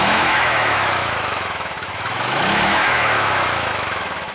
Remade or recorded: remade